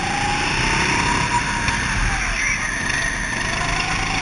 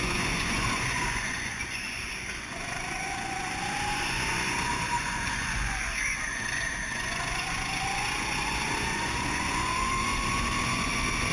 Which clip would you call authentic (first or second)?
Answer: first